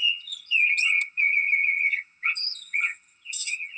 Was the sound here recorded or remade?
remade